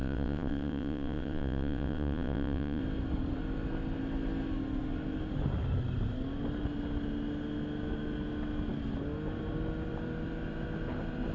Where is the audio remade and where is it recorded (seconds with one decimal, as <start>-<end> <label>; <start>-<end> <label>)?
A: 0.0-2.8 remade; 2.8-11.3 recorded